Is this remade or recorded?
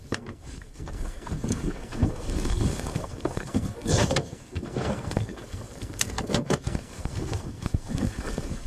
remade